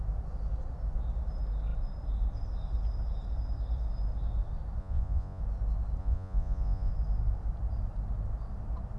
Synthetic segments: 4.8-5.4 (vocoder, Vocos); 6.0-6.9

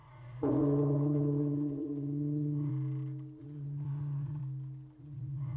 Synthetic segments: 0.0-2.7 (vocoder, Vocos); 3.4-4.4; 5.0-5.6

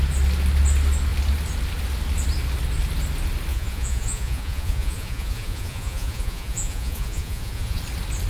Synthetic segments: 3.5-7.8 (vocoder, Vocos)

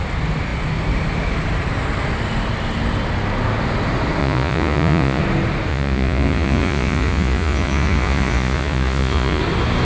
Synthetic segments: 4.2-5.2 (vocoder, Vocos); 5.7-9.4

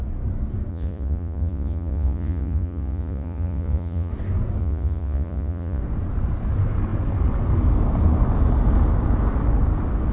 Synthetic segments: 0.7-4.1 (vocoder, Vocos); 4.6-5.8

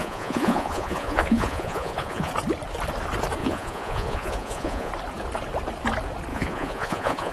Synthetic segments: 0.0-2.3 (vocoder, Vocos); 3.4-4.9; 6.3-7.3

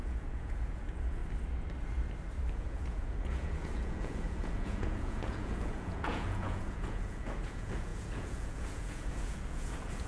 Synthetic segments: 0.0-1.2 (vocoder, Vocos); 2.5-10.1